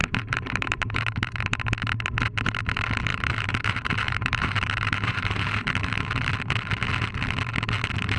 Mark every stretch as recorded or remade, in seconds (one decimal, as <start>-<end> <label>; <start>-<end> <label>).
0.0-1.6 remade; 1.6-3.1 recorded; 3.1-6.3 remade; 6.3-8.2 recorded

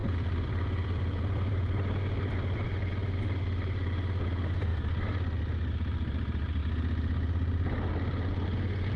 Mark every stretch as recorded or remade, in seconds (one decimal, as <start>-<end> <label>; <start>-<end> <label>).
0.0-2.9 remade; 2.9-9.0 recorded

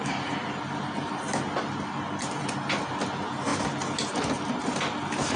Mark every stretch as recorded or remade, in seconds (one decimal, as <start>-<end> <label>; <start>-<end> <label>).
0.0-5.4 recorded

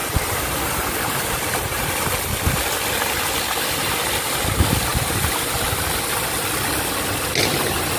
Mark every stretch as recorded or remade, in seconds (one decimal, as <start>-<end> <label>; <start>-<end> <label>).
0.0-1.9 remade; 1.9-8.0 recorded

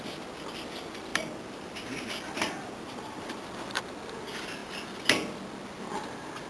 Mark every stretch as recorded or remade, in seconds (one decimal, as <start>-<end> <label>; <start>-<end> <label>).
0.0-1.1 recorded; 1.1-3.8 remade; 3.8-6.5 recorded

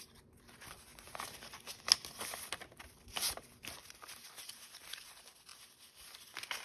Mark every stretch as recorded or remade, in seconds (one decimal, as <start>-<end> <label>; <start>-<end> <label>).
0.0-6.6 recorded

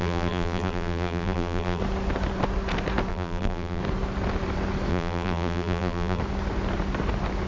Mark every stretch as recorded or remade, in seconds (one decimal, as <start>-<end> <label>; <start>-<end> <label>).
0.0-1.8 remade; 1.8-3.1 recorded; 3.1-3.8 remade; 3.8-4.9 recorded; 4.9-6.2 remade; 6.2-7.5 recorded